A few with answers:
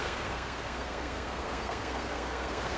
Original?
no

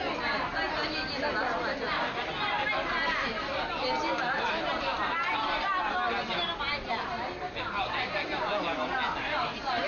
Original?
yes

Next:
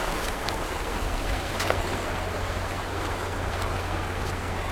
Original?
no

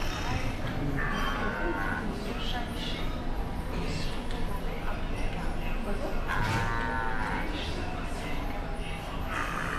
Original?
yes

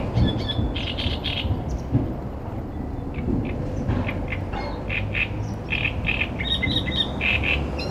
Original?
yes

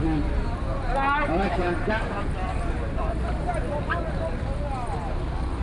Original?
yes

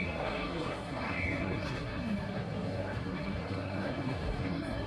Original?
no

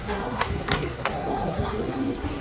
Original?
no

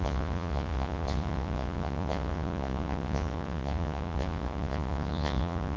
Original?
no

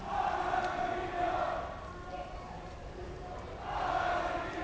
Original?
yes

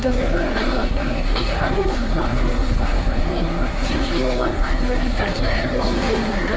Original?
no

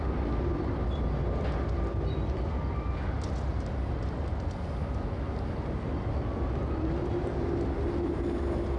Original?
yes